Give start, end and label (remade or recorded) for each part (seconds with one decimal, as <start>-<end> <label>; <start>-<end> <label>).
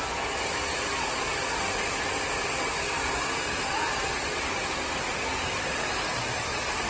0.0-4.6 recorded; 4.6-5.9 remade; 5.9-6.9 recorded